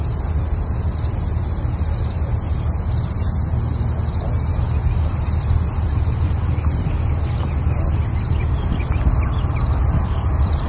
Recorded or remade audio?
recorded